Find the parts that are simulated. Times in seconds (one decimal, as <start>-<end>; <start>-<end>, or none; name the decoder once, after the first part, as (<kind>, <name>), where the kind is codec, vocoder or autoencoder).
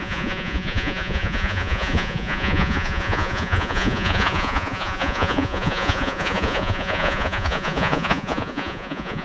0.0-9.2 (vocoder, Vocos)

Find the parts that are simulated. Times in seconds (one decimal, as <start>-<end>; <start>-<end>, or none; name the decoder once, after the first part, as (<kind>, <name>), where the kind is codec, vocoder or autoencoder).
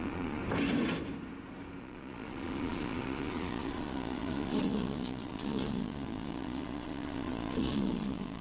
0.0-0.4 (vocoder, Vocos); 1.8-8.4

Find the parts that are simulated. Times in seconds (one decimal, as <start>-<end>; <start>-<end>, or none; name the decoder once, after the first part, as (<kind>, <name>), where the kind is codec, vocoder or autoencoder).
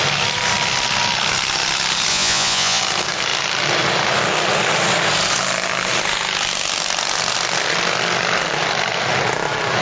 2.1-2.8 (vocoder, Vocos)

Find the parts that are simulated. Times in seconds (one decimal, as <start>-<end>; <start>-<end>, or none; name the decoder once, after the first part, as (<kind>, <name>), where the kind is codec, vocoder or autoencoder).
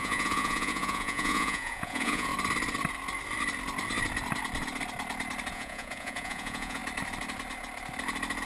0.0-2.3 (vocoder, Vocos); 5.5-6.8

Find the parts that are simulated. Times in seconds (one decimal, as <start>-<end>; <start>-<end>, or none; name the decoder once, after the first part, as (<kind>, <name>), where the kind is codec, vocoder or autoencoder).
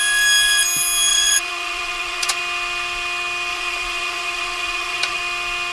1.1-2.4 (vocoder, Vocos); 3.5-5.2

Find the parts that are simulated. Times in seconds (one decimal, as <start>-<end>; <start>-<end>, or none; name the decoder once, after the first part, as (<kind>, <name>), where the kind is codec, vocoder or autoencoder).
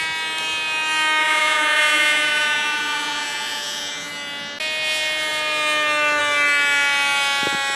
1.2-4.1 (vocoder, Vocos)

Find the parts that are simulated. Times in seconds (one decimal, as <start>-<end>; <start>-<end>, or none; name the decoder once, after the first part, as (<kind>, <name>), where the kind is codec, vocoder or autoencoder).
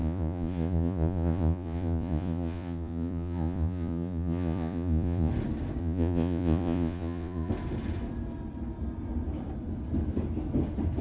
0.0-5.3 (vocoder, Vocos); 5.8-7.5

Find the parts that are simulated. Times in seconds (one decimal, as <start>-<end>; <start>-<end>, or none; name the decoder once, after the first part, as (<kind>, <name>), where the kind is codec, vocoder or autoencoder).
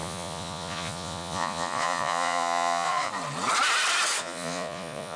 0.0-3.1 (vocoder, Vocos); 4.2-5.2